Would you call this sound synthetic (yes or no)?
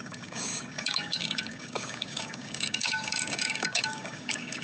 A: yes